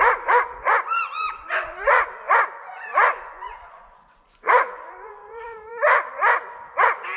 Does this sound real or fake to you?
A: fake